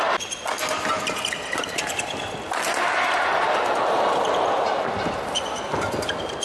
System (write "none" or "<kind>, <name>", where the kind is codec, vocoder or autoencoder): none